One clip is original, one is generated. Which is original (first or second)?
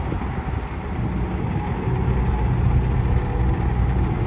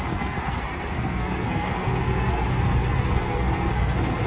first